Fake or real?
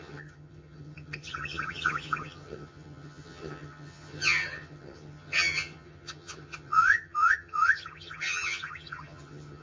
fake